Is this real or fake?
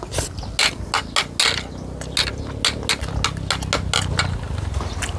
real